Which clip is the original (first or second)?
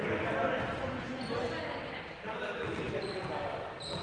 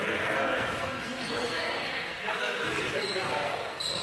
first